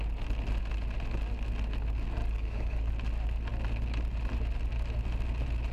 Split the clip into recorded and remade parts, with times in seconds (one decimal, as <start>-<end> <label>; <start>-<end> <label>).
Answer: 0.0-2.2 recorded; 2.2-2.9 remade; 2.9-5.7 recorded